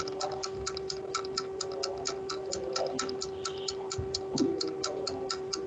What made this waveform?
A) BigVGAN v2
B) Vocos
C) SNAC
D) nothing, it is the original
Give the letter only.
D